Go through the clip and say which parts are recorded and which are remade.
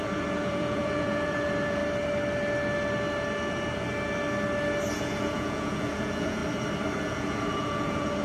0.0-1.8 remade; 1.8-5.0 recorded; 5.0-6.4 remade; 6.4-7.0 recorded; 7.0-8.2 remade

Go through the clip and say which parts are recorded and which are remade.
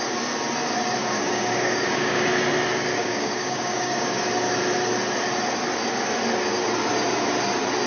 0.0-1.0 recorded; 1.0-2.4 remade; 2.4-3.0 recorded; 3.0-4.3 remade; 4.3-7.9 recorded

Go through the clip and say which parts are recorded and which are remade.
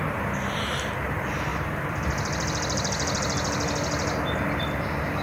0.0-5.2 recorded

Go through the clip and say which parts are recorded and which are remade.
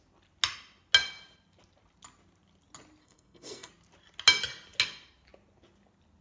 0.0-3.0 recorded; 3.0-3.7 remade; 3.7-6.2 recorded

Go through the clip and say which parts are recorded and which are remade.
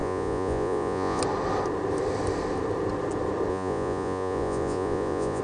0.0-1.2 remade; 1.2-3.5 recorded; 3.5-5.4 remade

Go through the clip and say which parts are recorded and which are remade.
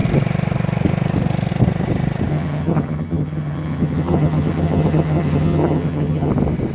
0.0-2.3 recorded; 2.3-6.3 remade; 6.3-6.7 recorded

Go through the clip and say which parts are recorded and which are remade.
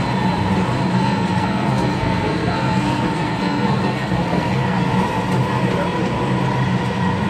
0.0-0.9 recorded; 0.9-4.9 remade; 4.9-7.3 recorded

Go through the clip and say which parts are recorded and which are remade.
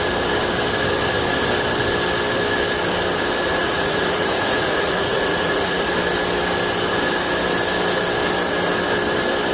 0.0-3.5 recorded; 3.5-5.9 remade; 5.9-9.5 recorded